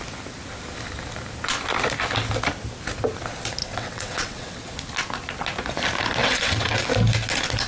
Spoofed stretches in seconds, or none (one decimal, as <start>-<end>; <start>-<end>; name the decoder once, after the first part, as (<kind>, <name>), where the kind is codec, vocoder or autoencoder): 3.6-4.6 (vocoder, WaveNeXt); 6.2-6.9